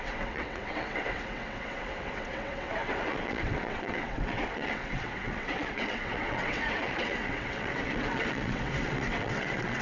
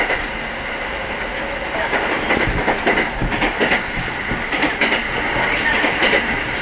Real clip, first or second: second